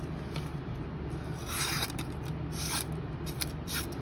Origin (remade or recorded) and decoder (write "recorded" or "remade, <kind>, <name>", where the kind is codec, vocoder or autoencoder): remade, vocoder, BigVGAN v2